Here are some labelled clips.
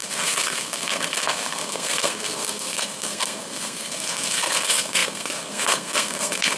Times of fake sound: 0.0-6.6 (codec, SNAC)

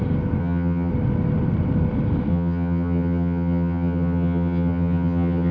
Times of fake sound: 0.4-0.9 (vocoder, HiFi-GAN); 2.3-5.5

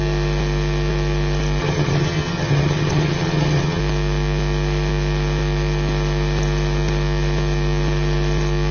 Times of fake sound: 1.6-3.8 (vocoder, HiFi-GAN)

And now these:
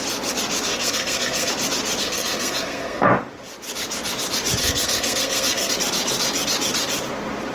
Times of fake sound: 0.7-1.5 (codec, SNAC); 2.0-3.1; 4.6-5.7

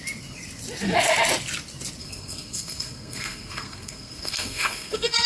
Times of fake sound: 2.0-5.3 (codec, SNAC)